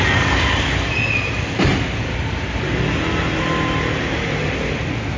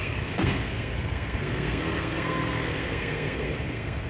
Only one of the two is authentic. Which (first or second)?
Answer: first